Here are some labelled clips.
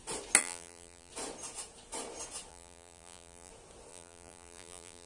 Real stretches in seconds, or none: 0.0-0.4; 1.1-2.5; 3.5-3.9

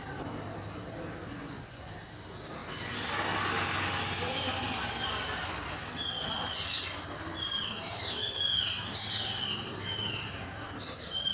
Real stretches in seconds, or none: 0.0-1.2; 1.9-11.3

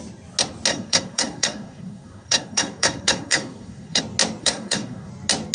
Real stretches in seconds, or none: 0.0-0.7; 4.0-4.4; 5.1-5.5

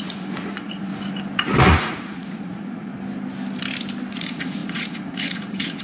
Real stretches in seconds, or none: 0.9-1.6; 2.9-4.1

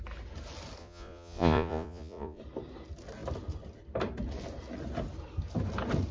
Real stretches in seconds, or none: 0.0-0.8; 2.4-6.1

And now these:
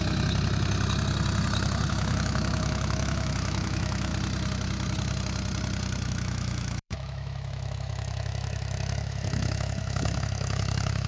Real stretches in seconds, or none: 0.0-1.9; 4.1-6.1

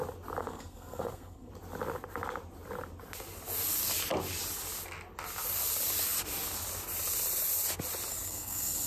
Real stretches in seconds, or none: 0.0-0.4; 1.5-8.1